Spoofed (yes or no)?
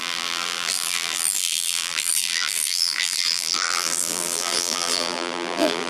yes